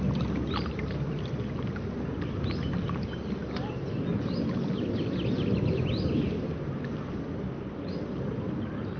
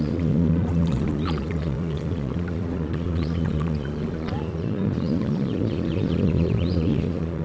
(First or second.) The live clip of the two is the first